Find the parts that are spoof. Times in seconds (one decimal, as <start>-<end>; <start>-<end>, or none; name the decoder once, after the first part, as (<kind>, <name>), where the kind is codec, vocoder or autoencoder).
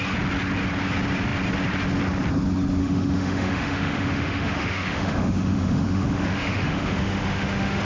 2.8-7.8 (autoencoder, DAC-VAE)